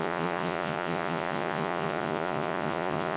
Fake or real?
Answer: fake